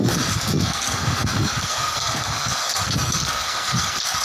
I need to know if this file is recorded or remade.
remade